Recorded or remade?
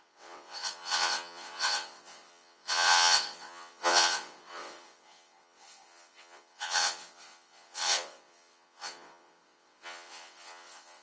remade